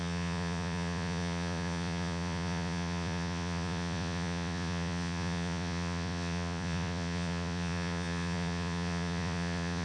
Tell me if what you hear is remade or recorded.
remade